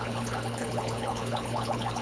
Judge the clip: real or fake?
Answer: fake